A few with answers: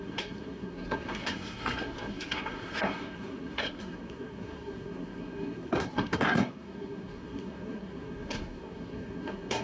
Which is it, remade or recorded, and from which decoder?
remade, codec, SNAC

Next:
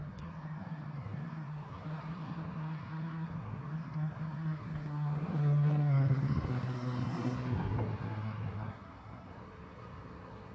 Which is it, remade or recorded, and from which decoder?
remade, codec, SNAC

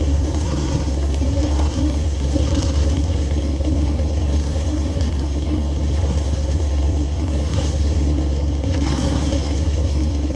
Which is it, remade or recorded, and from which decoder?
remade, codec, SNAC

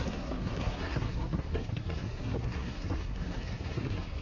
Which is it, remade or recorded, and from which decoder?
remade, codec, SNAC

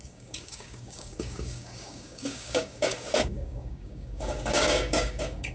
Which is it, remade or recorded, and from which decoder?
remade, codec, DAC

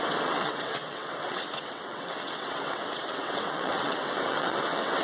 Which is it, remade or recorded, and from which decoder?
remade, vocoder, WaveNeXt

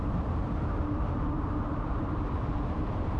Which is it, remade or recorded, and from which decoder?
remade, vocoder, BigVGAN v2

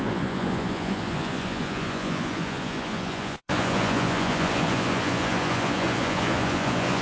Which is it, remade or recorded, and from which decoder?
remade, vocoder, Vocos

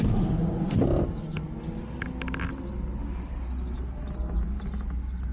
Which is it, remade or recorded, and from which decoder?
recorded